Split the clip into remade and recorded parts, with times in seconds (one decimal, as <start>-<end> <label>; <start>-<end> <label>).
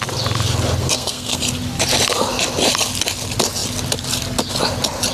0.0-0.8 recorded; 0.8-1.4 remade; 1.4-5.1 recorded